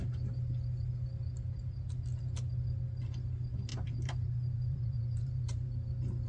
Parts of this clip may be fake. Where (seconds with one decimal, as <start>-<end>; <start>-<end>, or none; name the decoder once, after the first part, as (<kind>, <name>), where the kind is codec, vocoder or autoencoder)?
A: 3.7-6.3 (vocoder, BigVGAN v2)